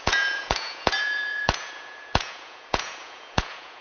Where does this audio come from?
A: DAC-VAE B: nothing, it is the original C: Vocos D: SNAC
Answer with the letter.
C